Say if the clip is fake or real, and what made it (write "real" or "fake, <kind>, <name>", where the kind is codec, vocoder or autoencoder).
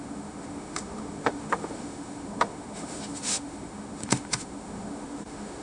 fake, autoencoder, DAC-VAE